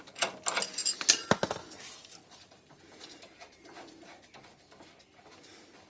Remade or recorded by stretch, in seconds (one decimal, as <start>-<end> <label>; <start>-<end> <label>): 0.0-5.9 recorded